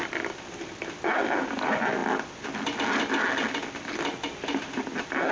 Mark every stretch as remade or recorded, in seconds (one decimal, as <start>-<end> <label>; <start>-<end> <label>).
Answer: 0.0-5.3 recorded